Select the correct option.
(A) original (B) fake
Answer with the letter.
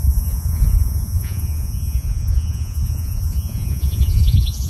B